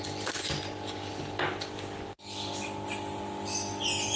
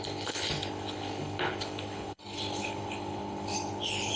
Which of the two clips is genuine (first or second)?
first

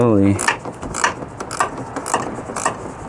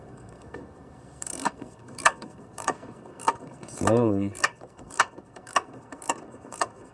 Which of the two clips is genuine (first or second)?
first